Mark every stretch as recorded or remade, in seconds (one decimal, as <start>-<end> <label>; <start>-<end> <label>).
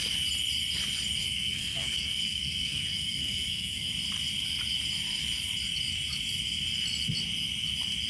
0.0-1.2 recorded; 1.2-3.9 remade; 3.9-8.1 recorded